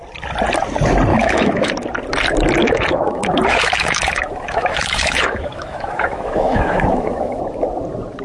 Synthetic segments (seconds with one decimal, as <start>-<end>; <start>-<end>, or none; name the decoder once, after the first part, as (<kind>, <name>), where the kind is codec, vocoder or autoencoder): 1.1-1.7 (autoencoder, DAC-VAE); 2.6-7.4